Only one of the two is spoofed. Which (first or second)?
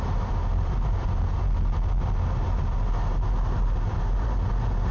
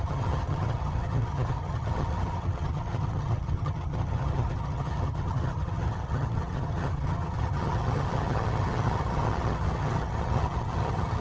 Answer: second